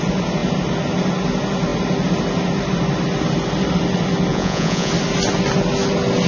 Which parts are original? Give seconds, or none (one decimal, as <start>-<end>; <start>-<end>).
0.0-4.3; 4.9-6.3